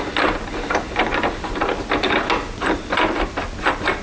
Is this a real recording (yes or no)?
yes